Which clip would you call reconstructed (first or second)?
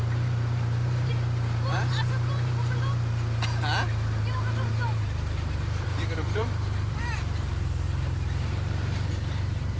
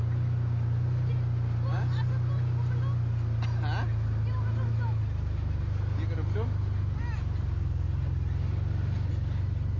first